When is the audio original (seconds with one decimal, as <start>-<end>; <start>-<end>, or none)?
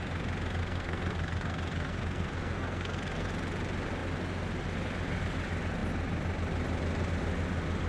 0.0-0.6; 3.3-7.9